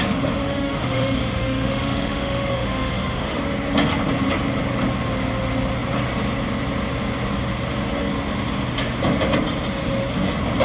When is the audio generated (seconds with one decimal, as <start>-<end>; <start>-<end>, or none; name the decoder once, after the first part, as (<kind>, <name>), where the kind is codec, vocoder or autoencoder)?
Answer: 0.4-3.4 (autoencoder, DAC-VAE)